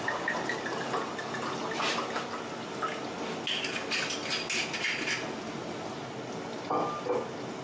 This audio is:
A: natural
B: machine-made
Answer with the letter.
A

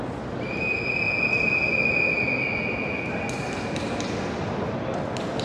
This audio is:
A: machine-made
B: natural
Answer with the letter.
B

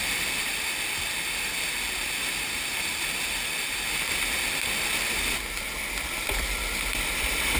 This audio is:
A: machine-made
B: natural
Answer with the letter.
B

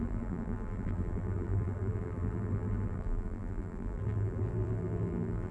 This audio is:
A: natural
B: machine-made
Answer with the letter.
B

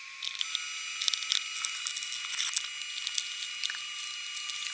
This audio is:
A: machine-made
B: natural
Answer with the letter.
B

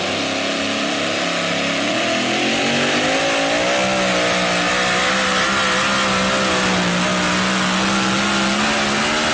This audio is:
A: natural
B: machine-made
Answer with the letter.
A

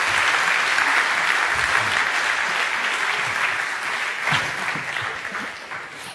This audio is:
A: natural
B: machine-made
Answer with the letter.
A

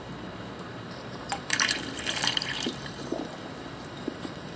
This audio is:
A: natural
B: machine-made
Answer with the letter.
B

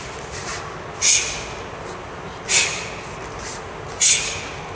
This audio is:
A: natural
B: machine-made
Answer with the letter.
A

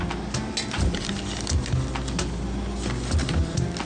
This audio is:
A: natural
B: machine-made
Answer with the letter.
A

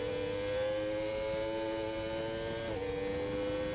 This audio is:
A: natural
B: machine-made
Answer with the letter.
A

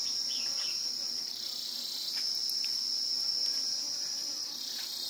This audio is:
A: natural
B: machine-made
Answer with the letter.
B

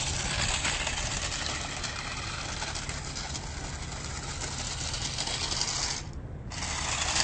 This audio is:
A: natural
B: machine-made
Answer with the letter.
A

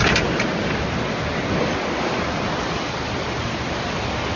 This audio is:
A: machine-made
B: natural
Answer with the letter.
B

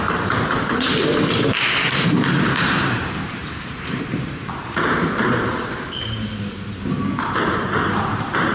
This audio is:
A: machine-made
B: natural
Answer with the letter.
A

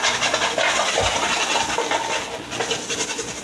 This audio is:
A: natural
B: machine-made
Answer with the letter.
A